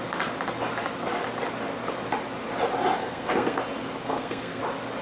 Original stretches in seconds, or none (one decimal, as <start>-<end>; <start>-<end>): 0.0-3.0; 3.6-4.0; 4.6-5.0